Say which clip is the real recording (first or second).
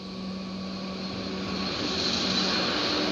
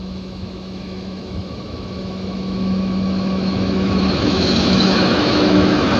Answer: first